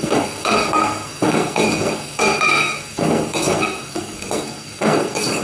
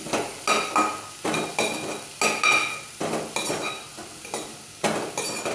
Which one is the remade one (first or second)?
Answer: first